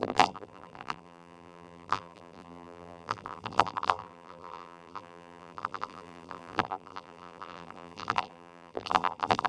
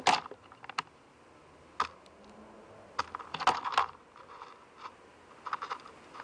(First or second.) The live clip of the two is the second